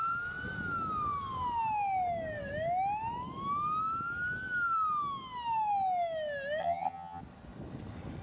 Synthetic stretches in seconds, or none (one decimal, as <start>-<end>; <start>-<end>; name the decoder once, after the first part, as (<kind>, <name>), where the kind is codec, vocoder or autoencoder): 6.6-7.2 (vocoder, HiFi-GAN)